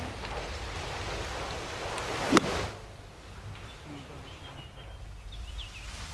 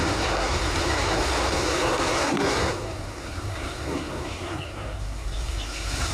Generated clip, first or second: second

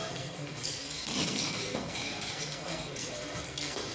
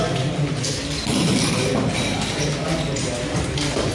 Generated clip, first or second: first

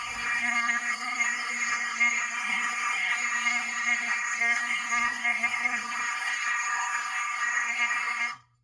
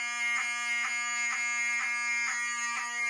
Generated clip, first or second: first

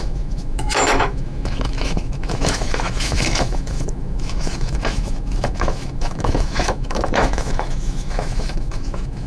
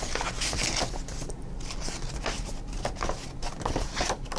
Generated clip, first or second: first